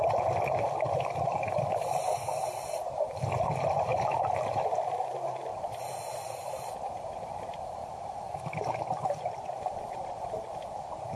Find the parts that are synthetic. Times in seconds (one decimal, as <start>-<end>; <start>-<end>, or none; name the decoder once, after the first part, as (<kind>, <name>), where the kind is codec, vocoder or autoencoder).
0.0-3.9 (vocoder, BigVGAN v2); 4.5-5.5; 6.7-7.8; 10.6-11.2